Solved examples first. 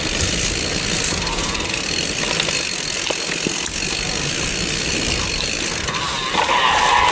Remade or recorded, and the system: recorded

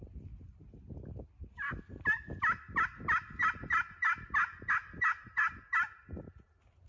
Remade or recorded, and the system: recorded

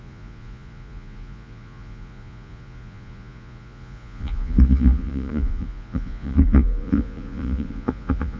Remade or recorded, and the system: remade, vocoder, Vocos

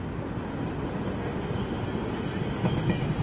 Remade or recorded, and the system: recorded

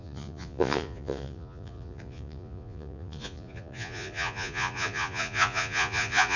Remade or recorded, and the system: remade, vocoder, Vocos